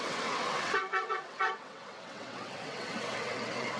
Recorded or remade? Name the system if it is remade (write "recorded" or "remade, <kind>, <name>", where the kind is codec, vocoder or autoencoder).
remade, vocoder, WaveNeXt